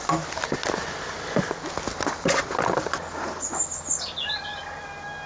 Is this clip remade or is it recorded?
recorded